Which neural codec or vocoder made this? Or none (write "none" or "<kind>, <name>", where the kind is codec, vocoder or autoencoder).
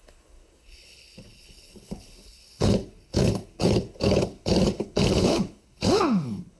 codec, HILCodec